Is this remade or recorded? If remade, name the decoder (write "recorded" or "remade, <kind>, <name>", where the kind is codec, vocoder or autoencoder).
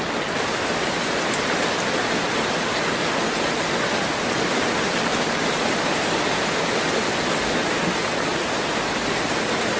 recorded